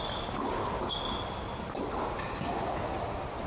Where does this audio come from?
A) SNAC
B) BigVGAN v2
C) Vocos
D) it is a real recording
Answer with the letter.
D